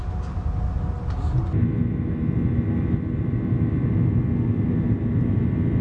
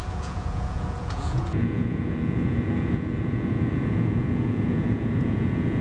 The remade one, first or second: second